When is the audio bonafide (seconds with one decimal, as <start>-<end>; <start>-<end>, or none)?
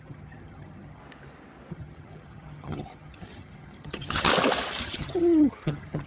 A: 1.0-1.7; 4.3-4.8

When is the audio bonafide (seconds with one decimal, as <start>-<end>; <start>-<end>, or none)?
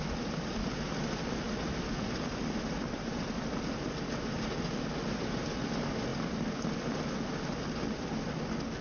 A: 0.0-8.8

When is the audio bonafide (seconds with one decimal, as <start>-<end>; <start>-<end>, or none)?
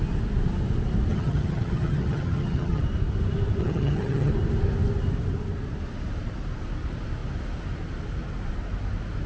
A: 0.0-1.1; 2.8-3.6; 4.3-9.3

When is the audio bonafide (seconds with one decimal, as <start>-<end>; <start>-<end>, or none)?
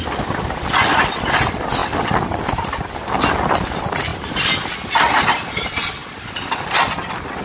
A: 0.0-7.4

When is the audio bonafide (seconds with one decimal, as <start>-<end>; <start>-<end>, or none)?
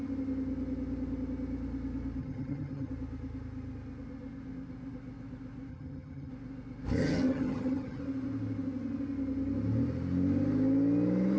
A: 0.0-2.2; 2.9-5.7; 6.3-7.0; 8.0-11.4